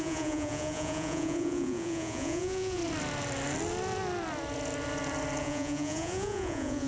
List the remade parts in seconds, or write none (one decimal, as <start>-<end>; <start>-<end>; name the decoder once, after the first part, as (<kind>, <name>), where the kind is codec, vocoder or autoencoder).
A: 0.0-2.8 (vocoder, Vocos); 5.4-6.9